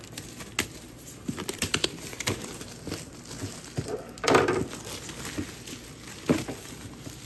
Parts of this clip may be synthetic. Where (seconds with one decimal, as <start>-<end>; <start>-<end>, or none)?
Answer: 0.7-2.5